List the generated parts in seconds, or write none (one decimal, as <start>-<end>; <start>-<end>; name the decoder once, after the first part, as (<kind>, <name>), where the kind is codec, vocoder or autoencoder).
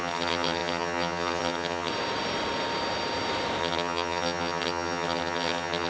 0.0-1.9 (vocoder, HiFi-GAN); 3.6-5.9